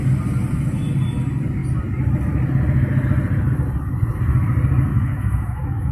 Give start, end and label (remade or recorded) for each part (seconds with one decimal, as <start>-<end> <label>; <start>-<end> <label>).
0.0-4.9 recorded; 4.9-5.9 remade